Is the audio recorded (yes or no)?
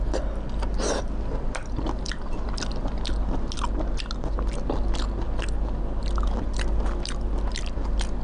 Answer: yes